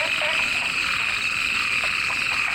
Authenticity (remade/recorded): recorded